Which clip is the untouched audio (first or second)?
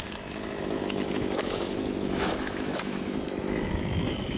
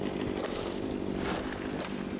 second